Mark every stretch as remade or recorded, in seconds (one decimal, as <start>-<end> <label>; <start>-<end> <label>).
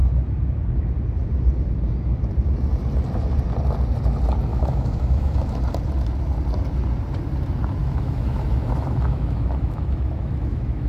0.0-4.5 recorded; 4.5-5.6 remade; 5.6-7.8 recorded; 7.8-10.9 remade